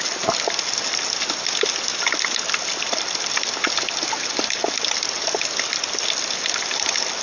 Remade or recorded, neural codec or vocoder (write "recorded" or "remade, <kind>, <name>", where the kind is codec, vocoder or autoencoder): recorded